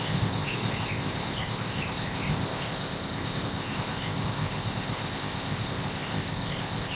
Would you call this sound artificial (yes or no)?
yes